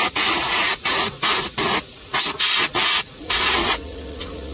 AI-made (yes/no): yes